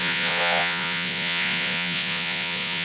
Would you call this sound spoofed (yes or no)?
yes